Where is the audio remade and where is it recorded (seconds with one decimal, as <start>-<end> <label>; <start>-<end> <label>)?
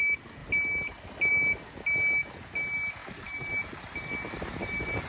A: 0.0-5.1 recorded